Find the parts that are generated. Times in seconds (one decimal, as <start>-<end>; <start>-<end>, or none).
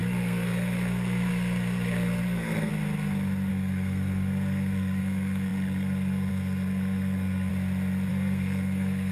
0.0-2.7; 3.5-7.5; 8.1-9.1